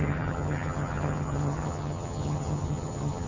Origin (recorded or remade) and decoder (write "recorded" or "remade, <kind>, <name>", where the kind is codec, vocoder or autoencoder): remade, vocoder, HiFi-GAN